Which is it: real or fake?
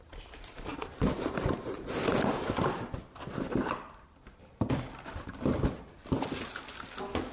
real